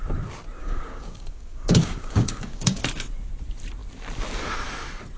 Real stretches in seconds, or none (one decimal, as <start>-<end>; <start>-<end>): 0.0-0.6; 2.8-5.2